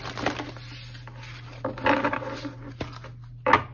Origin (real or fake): real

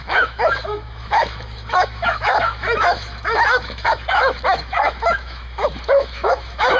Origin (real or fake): fake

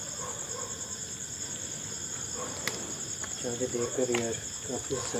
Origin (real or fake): real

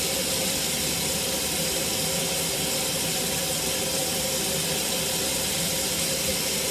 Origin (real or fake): real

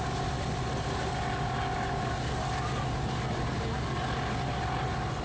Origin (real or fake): real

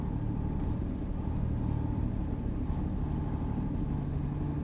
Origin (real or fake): real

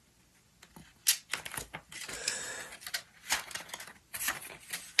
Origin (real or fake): real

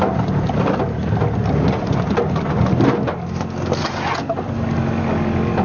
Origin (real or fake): real